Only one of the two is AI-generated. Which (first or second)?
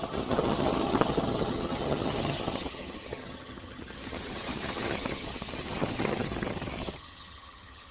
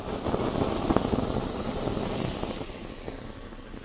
first